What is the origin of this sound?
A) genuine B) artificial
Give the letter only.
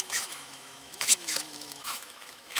B